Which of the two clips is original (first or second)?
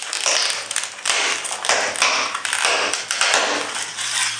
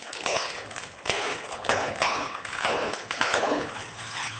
first